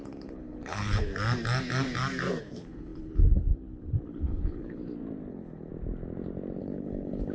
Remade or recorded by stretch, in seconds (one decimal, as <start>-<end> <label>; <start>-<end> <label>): 0.0-1.1 remade; 1.1-2.4 recorded; 2.4-4.8 remade; 4.8-5.3 recorded; 5.3-5.7 remade; 5.7-6.6 recorded; 6.6-7.3 remade